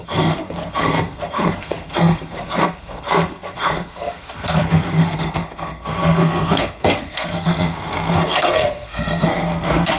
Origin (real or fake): fake